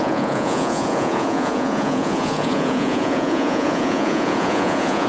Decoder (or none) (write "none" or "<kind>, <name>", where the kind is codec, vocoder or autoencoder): vocoder, Vocos